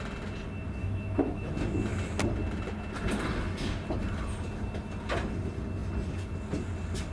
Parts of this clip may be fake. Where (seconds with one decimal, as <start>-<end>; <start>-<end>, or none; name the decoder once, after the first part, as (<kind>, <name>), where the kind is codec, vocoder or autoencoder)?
0.8-1.5 (autoencoder, DAC-VAE)